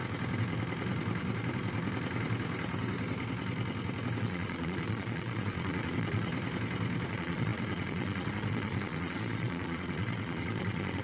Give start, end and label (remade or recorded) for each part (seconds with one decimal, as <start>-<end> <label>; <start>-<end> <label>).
0.0-4.2 recorded; 4.2-6.3 remade; 6.3-7.1 recorded; 7.1-11.0 remade